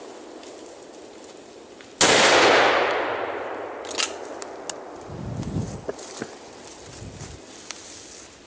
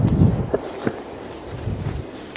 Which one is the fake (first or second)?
second